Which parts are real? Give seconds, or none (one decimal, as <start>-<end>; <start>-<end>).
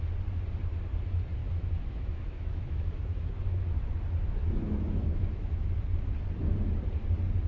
0.0-1.4; 3.8-4.4; 5.8-7.5